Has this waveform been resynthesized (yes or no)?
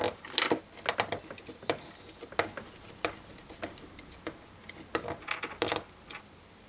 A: no